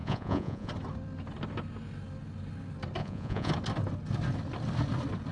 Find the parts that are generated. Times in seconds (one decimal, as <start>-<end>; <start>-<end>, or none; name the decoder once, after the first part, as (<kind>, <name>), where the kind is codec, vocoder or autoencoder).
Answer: 0.0-0.7 (vocoder, Vocos); 3.0-3.5